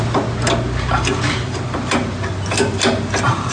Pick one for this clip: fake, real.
real